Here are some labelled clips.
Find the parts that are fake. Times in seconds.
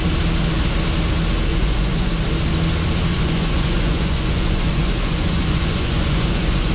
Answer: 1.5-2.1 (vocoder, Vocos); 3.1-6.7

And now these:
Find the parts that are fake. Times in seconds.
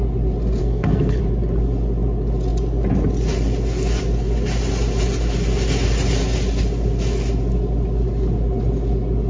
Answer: 0.6-1.2 (codec, SNAC)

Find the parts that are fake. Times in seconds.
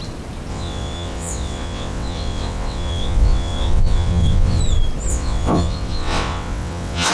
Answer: 0.5-4.6 (vocoder, WaveNeXt); 5.1-7.1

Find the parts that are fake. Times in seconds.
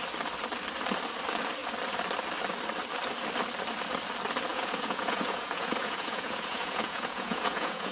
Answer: 4.5-7.9 (vocoder, Vocos)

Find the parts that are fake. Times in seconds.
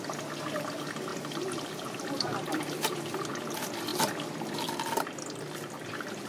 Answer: 1.1-3.3 (vocoder, BigVGAN v2); 3.9-4.8